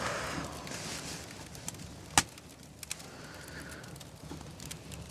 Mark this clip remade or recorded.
recorded